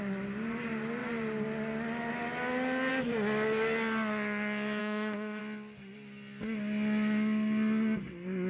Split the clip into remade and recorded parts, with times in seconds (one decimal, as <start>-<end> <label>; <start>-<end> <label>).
0.0-4.8 recorded; 4.8-5.4 remade; 5.4-8.5 recorded